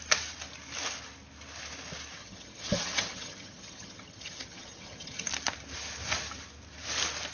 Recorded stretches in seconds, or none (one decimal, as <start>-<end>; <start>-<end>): 0.0-2.2; 5.3-7.3